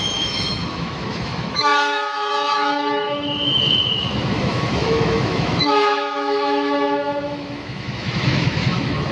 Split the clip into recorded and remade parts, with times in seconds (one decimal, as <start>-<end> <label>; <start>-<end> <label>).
0.0-9.1 remade